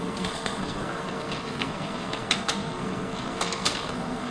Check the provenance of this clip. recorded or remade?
remade